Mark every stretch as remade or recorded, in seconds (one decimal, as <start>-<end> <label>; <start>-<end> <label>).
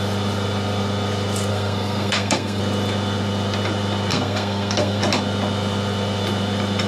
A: 0.0-1.5 recorded; 1.5-2.6 remade; 2.6-4.1 recorded; 4.1-5.0 remade; 5.0-6.9 recorded